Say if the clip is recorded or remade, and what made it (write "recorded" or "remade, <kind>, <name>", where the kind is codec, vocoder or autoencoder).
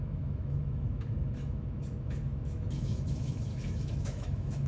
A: remade, autoencoder, DAC-VAE